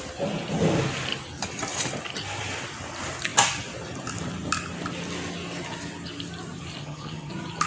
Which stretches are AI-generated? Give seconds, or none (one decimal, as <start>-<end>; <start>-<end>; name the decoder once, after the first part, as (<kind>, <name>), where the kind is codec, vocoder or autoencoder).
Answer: 6.8-7.3 (vocoder, HiFi-GAN)

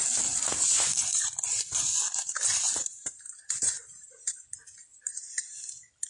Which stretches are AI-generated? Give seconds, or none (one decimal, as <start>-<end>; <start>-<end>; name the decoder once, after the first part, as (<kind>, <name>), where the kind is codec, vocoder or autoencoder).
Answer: 0.5-1.8 (vocoder, BigVGAN v2); 2.5-4.5; 4.9-5.5

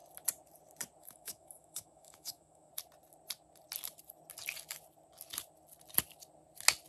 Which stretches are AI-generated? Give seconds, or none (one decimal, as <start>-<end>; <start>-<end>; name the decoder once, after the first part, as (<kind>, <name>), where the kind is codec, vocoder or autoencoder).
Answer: 1.0-2.7 (autoencoder, DAC-VAE)

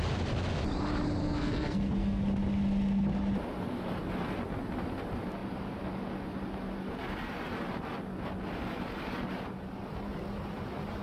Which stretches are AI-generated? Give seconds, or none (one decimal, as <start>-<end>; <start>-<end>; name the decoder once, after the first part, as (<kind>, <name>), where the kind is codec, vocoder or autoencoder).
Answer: 1.2-2.2 (codec, SNAC)

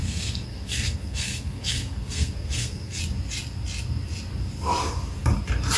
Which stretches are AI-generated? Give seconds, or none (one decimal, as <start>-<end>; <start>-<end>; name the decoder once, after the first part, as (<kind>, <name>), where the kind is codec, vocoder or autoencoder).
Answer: 0.0-3.0 (codec, SNAC)

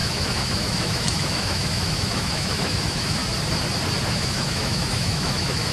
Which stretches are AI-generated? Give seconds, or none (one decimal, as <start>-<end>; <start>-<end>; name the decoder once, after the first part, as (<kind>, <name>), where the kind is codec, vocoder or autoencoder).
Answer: 0.0-3.2 (autoencoder, DAC-VAE); 4.1-5.7